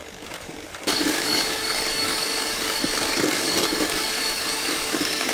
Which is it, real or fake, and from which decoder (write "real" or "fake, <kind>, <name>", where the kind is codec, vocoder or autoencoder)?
fake, codec, DAC